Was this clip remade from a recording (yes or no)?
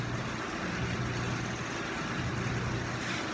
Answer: no